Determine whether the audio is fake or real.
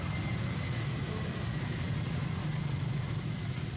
real